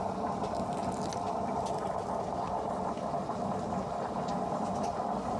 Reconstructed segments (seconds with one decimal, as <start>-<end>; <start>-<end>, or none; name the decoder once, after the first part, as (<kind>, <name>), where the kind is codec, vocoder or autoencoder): none